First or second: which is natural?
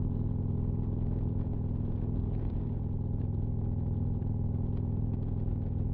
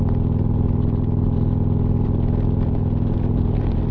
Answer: second